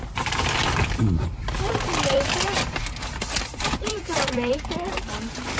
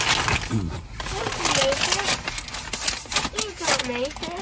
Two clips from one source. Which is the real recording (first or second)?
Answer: second